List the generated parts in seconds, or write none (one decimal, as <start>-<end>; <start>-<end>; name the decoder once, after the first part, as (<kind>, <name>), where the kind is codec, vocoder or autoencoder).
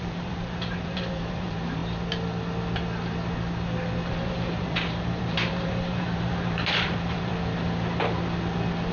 0.0-1.8 (vocoder, BigVGAN v2); 4.1-7.3